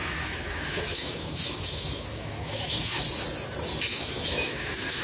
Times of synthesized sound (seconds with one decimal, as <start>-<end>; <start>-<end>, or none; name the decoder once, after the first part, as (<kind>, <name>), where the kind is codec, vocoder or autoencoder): 0.0-3.0 (autoencoder, DAC-VAE); 3.9-5.0